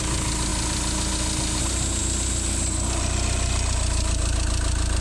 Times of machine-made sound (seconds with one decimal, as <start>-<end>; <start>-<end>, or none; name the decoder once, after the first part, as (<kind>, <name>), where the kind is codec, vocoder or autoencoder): none